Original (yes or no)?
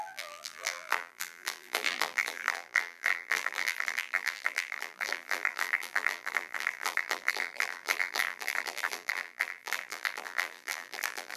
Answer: no